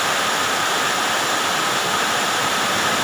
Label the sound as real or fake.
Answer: real